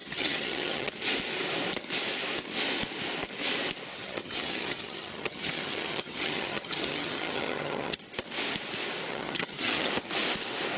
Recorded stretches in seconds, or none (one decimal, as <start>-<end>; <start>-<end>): 0.9-3.9; 8.0-9.1; 9.9-10.8